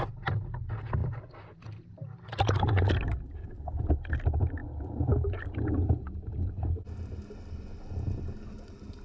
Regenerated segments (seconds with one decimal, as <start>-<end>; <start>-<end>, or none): 4.6-8.2

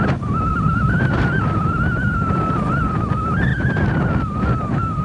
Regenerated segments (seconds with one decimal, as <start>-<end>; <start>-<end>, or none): 0.5-3.0